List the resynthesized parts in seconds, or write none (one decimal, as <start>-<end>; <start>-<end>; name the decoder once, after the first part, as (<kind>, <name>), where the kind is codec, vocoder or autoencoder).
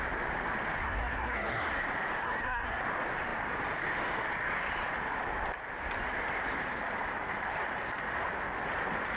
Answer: 0.8-1.7 (codec, SNAC); 2.2-2.8